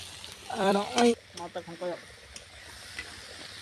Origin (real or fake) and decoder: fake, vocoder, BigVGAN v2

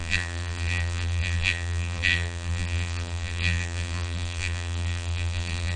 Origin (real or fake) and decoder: fake, vocoder, BigVGAN v2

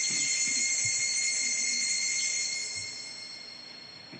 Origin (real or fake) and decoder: real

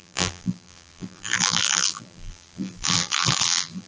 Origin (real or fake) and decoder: fake, vocoder, BigVGAN v2